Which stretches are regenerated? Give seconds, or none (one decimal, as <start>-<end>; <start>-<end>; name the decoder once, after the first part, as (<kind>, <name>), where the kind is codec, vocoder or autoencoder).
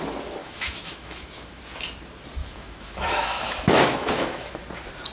0.4-1.6 (autoencoder, DAC-VAE); 2.4-4.6